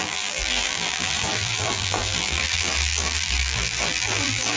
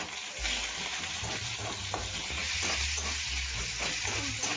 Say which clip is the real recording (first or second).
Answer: second